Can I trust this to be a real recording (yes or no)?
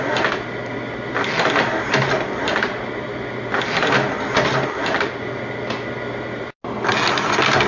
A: yes